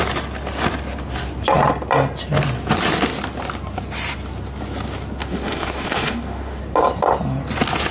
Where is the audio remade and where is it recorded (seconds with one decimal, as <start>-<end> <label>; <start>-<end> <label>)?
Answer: 0.0-5.2 recorded; 5.2-6.6 remade; 6.6-7.9 recorded